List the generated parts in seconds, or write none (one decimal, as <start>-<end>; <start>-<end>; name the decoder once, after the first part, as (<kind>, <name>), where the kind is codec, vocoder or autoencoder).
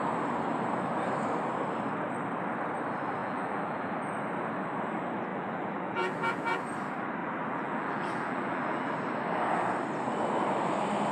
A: 3.2-3.9 (vocoder, BigVGAN v2); 5.3-6.6; 7.2-8.9